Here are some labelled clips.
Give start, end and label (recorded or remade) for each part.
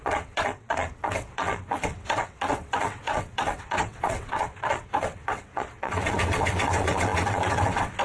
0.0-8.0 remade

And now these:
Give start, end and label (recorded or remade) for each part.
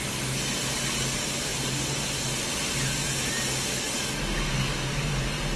0.0-5.6 recorded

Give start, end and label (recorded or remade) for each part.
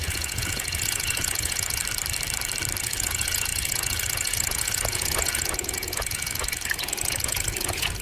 0.0-1.8 remade; 1.8-2.8 recorded; 2.8-8.0 remade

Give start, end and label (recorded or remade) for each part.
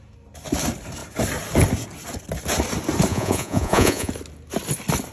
0.0-3.1 recorded; 3.1-4.1 remade; 4.1-5.1 recorded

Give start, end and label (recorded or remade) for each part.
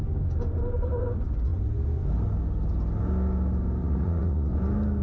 0.0-3.8 recorded; 3.8-4.5 remade; 4.5-5.0 recorded